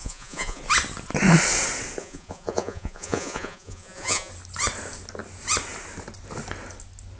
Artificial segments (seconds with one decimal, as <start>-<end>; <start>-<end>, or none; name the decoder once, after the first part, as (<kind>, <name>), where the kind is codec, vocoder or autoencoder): 0.0-0.6 (vocoder, Vocos); 2.0-4.3